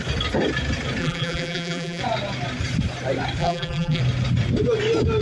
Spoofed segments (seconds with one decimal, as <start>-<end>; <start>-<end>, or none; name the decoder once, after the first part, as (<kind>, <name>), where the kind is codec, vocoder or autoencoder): 1.0-2.0 (vocoder, BigVGAN v2); 3.4-4.0